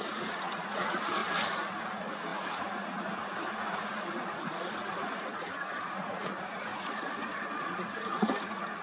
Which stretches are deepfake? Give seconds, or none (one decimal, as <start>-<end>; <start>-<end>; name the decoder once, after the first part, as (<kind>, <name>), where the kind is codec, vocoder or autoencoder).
0.0-1.2 (vocoder, Vocos); 1.9-8.8